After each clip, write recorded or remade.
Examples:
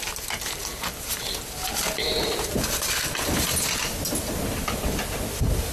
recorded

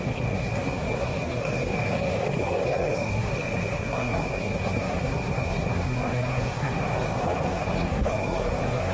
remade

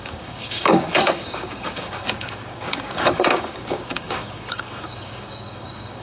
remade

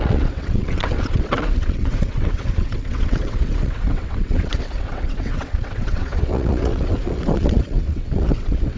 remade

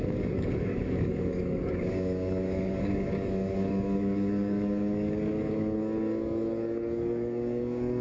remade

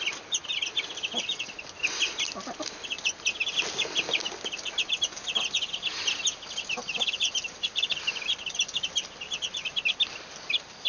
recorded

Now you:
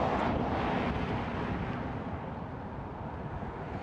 recorded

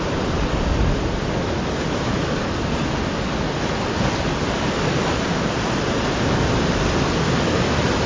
recorded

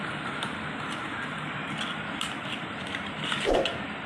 recorded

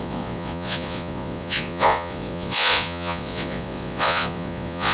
remade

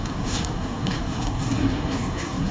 remade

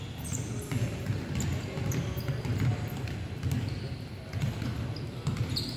recorded